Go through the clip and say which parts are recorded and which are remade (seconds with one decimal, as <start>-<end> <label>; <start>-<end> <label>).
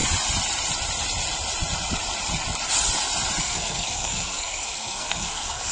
0.0-3.4 recorded; 3.4-5.7 remade